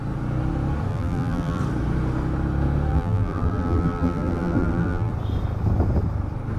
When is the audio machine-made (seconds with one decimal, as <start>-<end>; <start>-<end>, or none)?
0.9-1.6; 2.9-5.1